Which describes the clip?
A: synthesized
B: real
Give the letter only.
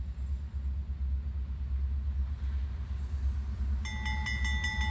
B